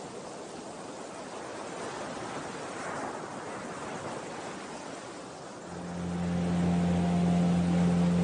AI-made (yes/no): no